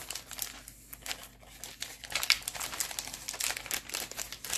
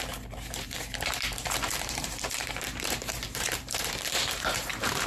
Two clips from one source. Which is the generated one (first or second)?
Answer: second